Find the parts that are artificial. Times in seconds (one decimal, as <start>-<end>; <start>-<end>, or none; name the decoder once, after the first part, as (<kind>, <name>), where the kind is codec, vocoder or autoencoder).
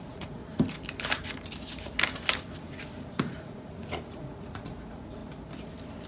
0.0-0.4 (vocoder, Vocos); 3.2-5.2